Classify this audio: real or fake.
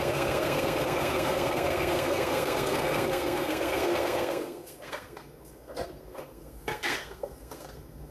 fake